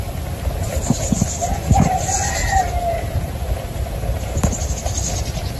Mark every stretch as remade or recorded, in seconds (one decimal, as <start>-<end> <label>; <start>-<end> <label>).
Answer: 0.0-5.6 recorded